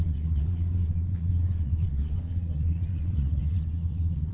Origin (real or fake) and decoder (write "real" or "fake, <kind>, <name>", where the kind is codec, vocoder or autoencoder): fake, vocoder, Vocos